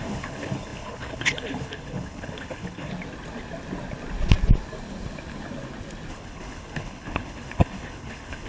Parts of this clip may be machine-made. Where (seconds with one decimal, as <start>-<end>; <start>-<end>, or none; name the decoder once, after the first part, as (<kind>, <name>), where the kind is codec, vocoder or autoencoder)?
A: 0.0-2.9 (codec, HILCodec); 6.1-8.5